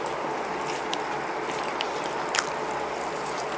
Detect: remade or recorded recorded